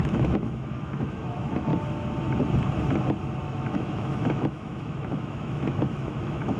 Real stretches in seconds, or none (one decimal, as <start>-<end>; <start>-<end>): 1.7-3.4